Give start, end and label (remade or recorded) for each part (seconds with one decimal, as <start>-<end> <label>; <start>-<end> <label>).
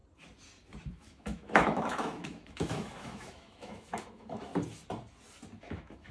0.0-0.9 recorded; 0.9-4.5 remade; 4.5-5.6 recorded; 5.6-6.1 remade